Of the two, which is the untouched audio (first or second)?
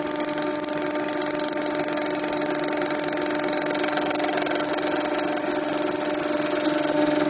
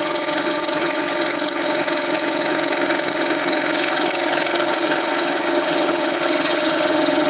first